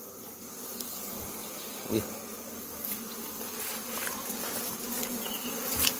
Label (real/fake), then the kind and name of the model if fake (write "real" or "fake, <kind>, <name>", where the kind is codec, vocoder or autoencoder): real